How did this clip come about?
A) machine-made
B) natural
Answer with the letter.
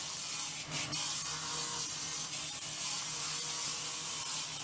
A